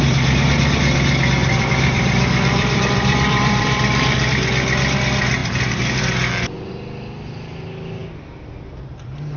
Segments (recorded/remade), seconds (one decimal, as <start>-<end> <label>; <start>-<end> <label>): 0.0-1.4 recorded; 1.4-4.3 remade; 4.3-5.4 recorded; 5.4-6.0 remade; 6.0-9.4 recorded